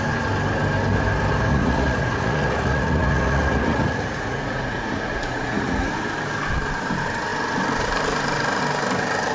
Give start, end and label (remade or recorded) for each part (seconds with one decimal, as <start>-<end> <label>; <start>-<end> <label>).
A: 0.0-1.5 recorded; 1.5-5.9 remade; 5.9-9.3 recorded